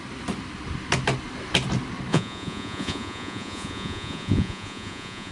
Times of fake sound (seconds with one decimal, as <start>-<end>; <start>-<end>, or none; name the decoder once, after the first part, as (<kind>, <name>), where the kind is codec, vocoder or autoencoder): 2.1-5.3 (vocoder, Vocos)